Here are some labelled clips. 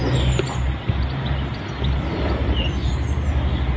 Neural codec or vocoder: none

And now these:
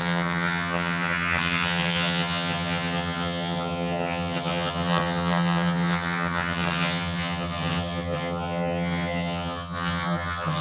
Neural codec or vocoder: vocoder, HiFi-GAN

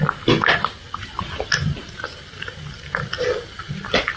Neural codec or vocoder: none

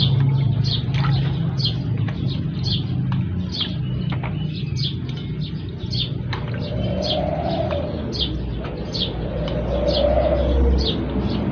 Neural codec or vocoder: none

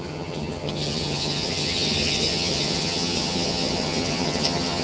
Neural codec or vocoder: vocoder, HiFi-GAN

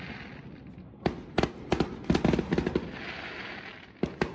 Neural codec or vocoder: none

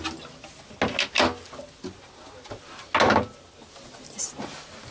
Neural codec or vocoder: none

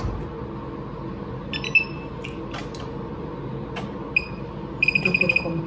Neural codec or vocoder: none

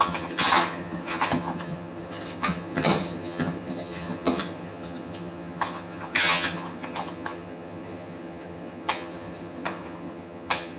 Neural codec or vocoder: vocoder, HiFi-GAN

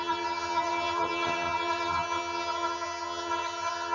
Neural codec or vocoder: vocoder, HiFi-GAN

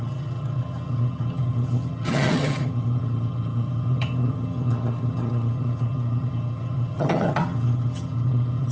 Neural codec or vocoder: vocoder, HiFi-GAN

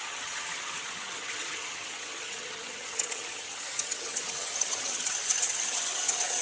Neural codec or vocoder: vocoder, HiFi-GAN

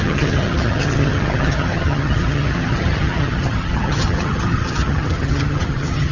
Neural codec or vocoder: vocoder, HiFi-GAN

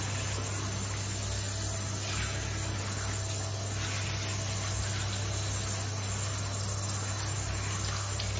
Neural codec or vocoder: none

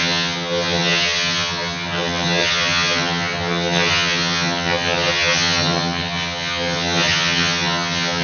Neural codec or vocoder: vocoder, HiFi-GAN